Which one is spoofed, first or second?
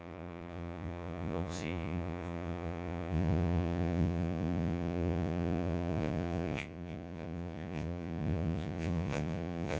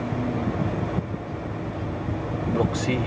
first